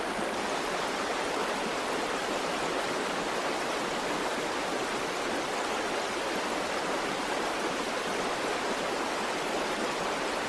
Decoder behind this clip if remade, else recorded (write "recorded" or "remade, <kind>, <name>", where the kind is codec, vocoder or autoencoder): recorded